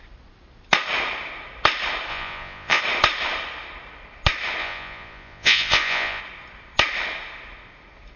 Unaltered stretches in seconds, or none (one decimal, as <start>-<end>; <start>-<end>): 0.0-2.1; 2.8-4.6; 6.2-8.2